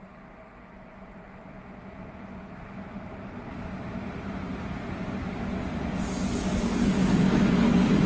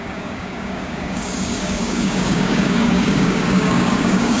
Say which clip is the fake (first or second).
second